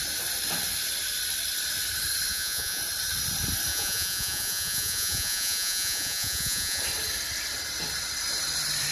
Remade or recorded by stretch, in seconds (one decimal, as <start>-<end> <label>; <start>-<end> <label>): 0.0-2.3 recorded; 2.3-2.8 remade; 2.8-3.7 recorded; 3.7-6.8 remade; 6.8-8.9 recorded